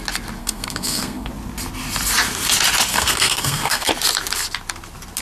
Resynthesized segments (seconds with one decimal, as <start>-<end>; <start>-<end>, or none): 0.4-1.3; 2.9-3.9